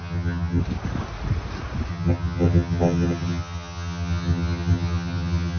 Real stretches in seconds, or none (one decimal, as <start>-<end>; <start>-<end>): 0.6-1.9